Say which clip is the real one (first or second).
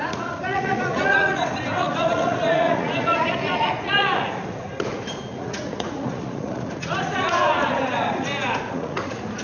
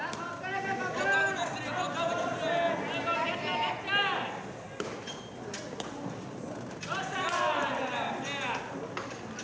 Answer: second